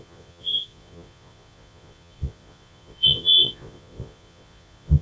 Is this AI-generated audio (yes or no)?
yes